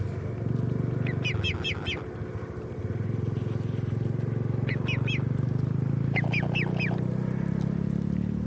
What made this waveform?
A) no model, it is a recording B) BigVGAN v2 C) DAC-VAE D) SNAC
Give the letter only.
A